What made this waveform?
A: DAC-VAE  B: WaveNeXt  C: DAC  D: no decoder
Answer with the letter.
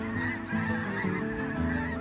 D